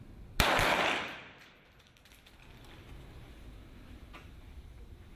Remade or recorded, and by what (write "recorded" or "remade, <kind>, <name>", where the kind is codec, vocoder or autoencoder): recorded